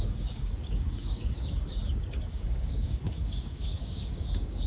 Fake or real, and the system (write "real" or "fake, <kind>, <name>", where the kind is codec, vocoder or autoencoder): fake, codec, DAC